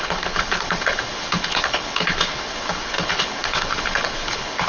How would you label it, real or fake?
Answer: fake